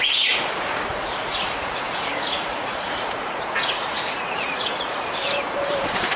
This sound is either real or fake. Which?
fake